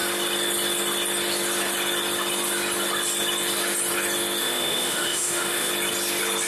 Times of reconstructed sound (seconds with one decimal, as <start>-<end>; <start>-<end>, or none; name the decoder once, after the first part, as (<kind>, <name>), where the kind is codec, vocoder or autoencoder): 4.4-5.7 (autoencoder, DAC-VAE)